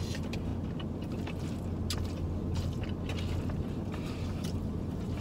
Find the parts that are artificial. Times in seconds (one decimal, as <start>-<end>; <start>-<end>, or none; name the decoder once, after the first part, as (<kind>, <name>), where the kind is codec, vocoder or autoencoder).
0.0-0.5 (vocoder, BigVGAN v2); 3.6-5.2